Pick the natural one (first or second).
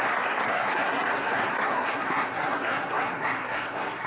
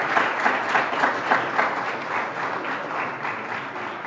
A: second